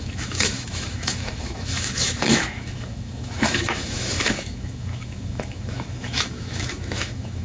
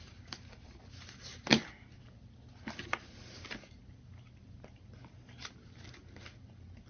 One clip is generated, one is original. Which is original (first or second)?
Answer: second